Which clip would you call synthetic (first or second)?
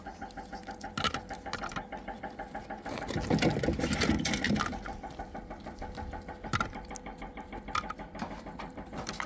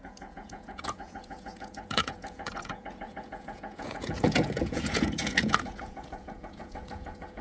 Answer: second